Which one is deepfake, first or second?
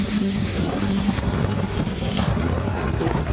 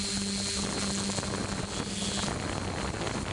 first